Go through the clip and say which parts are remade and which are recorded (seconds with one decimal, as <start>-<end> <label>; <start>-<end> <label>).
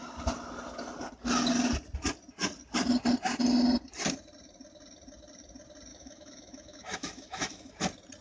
0.0-5.9 recorded; 5.9-7.7 remade; 7.7-8.2 recorded